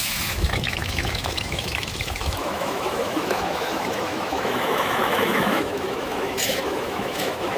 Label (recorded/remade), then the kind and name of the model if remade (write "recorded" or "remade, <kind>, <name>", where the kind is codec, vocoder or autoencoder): remade, autoencoder, DAC-VAE